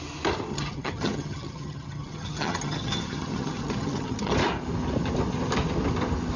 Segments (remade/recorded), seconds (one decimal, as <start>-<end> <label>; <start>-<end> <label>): 0.0-0.5 recorded; 0.5-4.3 remade; 4.3-6.4 recorded